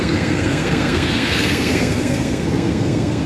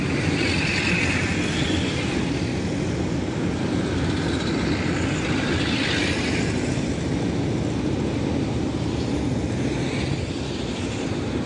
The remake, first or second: first